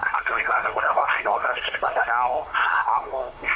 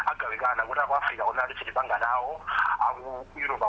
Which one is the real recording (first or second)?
second